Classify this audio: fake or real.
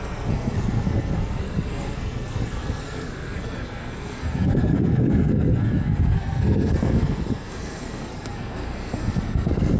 fake